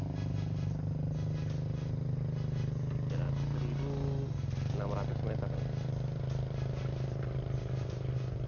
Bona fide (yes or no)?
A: yes